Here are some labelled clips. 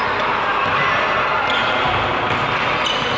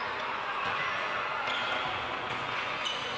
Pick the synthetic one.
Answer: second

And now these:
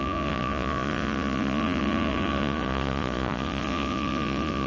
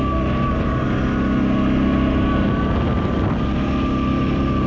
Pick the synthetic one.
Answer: first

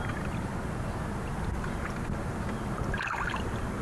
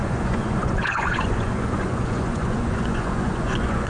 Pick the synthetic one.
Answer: second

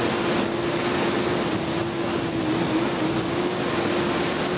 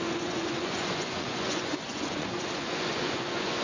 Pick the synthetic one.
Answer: second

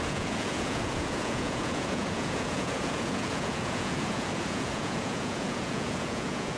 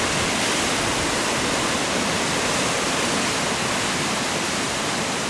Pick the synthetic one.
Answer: first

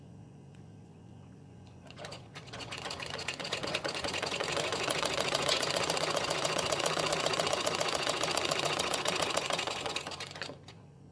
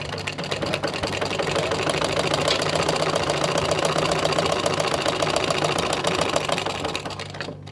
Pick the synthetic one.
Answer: first